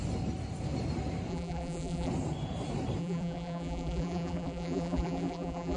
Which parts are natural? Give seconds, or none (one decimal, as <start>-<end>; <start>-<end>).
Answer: 0.0-1.3; 2.1-3.0